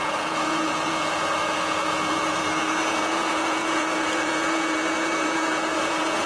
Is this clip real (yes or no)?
no